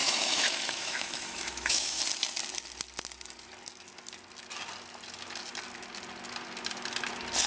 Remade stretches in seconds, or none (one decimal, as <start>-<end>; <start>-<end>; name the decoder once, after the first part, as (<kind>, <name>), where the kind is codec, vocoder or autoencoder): 0.0-2.0 (autoencoder, DAC-VAE)